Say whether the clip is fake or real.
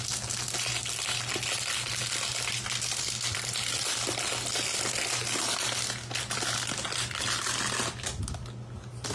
real